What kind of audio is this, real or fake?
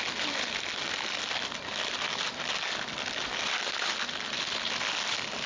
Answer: real